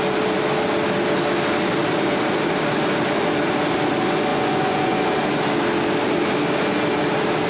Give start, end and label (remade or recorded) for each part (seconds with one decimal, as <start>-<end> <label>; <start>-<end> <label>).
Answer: 0.0-4.3 recorded; 4.3-5.0 remade; 5.0-7.5 recorded